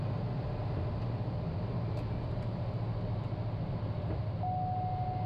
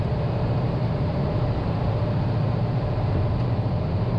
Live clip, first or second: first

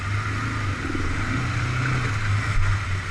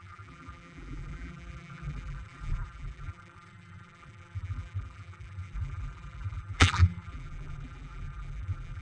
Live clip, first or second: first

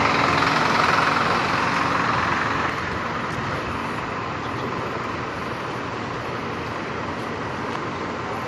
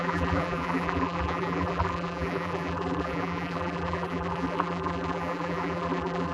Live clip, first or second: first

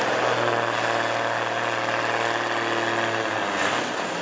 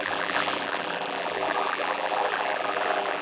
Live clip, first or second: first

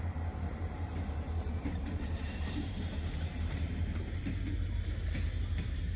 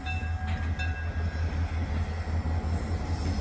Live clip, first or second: second